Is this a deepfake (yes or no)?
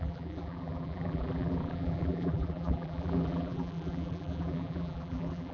yes